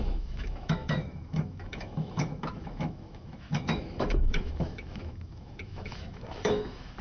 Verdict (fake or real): fake